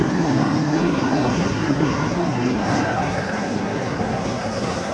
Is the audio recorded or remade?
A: remade